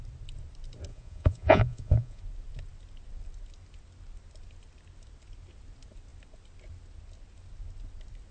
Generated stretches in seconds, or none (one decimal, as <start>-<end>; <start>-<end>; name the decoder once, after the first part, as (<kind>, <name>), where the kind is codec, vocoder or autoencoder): 0.9-2.2 (vocoder, Vocos)